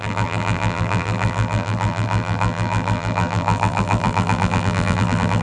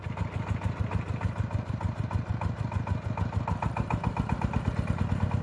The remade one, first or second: first